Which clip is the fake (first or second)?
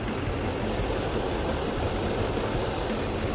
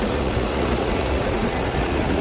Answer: second